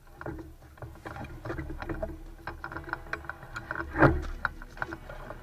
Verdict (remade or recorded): recorded